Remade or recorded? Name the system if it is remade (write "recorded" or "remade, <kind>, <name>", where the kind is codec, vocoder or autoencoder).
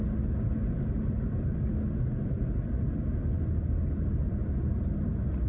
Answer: recorded